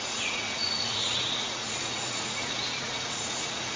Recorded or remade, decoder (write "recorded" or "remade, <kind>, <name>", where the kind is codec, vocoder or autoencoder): remade, vocoder, Vocos